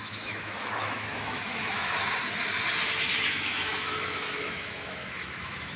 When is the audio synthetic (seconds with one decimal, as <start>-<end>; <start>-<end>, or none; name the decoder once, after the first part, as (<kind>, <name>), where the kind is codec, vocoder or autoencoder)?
0.0-2.0 (autoencoder, DAC-VAE); 3.2-5.8